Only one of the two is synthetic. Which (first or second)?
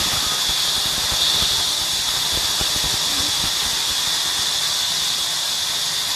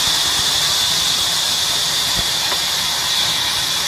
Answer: second